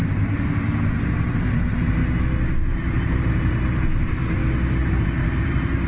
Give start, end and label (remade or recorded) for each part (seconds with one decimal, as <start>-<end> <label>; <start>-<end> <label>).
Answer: 0.0-2.0 remade; 2.0-2.6 recorded; 2.6-4.4 remade; 4.4-5.0 recorded; 5.0-5.9 remade